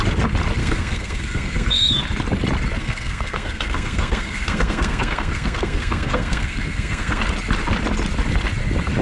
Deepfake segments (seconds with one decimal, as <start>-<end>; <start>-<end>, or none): 0.6-2.0; 2.8-7.2